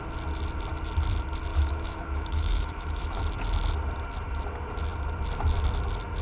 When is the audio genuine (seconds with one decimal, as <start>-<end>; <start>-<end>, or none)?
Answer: 0.0-1.5; 3.2-6.2